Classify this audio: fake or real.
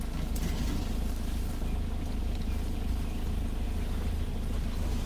real